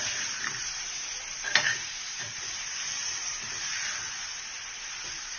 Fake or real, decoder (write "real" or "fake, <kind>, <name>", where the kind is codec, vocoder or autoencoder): fake, vocoder, BigVGAN v2